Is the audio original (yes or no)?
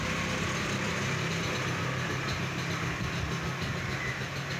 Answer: no